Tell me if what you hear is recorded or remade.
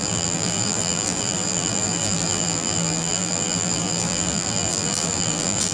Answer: remade